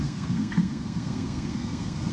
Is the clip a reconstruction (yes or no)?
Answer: yes